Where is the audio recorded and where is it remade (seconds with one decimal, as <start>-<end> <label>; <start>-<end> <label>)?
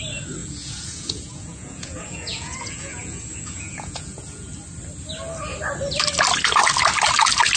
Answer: 0.0-0.4 recorded; 0.4-4.5 remade; 4.5-7.6 recorded